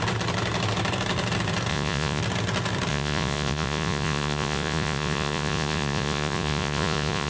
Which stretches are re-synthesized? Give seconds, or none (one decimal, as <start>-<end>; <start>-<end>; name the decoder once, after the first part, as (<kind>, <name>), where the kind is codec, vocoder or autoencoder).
1.7-2.2 (vocoder, Vocos); 2.9-7.3